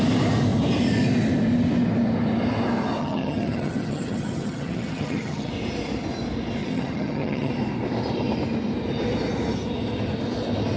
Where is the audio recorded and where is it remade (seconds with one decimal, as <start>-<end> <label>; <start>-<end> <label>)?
0.0-3.0 recorded; 3.0-5.5 remade; 5.5-6.6 recorded; 6.6-7.5 remade; 7.5-10.8 recorded